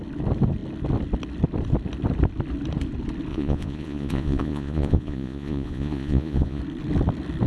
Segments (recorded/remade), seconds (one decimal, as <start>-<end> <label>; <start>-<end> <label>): 0.0-3.3 recorded; 3.3-6.6 remade; 6.6-7.5 recorded